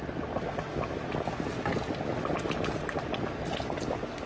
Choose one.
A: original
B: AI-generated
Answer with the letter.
A